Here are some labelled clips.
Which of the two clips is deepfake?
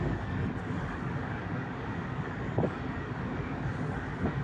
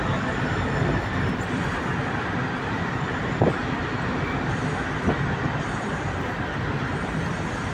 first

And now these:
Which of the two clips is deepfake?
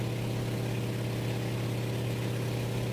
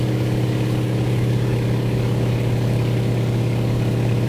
second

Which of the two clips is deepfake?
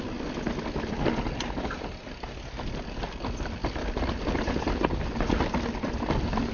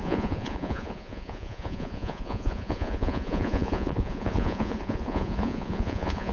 second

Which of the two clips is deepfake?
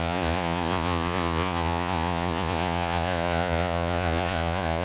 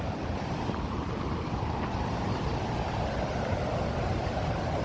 first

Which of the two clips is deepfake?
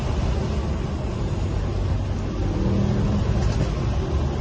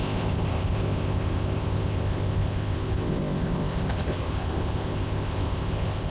second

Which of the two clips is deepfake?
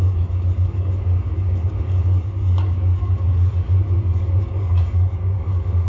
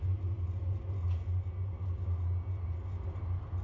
first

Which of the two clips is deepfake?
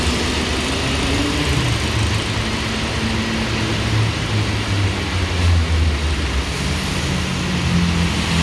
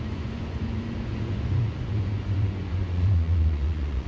second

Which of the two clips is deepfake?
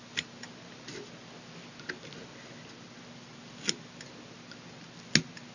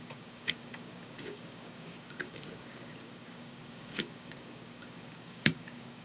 second